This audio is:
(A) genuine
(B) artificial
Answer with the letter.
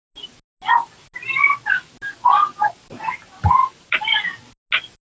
A